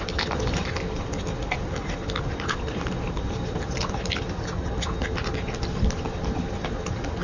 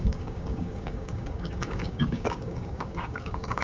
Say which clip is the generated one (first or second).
second